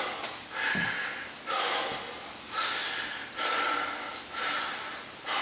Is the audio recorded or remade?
recorded